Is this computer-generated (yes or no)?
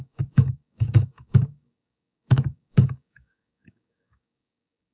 yes